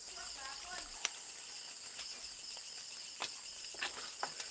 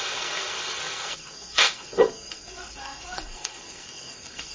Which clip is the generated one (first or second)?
second